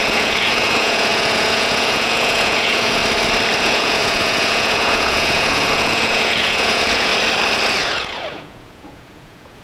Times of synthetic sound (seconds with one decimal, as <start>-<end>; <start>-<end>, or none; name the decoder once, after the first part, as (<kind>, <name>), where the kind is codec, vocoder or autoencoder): 0.0-3.0 (vocoder, Vocos); 3.6-7.1; 7.8-9.6